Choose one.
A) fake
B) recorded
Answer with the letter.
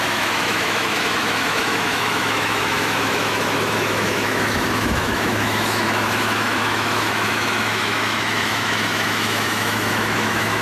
A